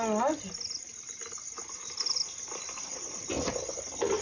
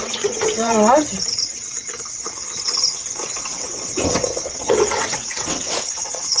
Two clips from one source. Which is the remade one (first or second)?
second